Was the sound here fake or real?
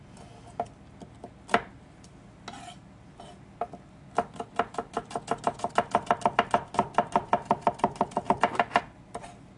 real